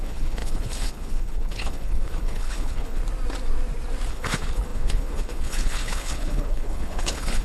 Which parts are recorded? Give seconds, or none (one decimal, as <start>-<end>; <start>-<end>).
3.0-4.1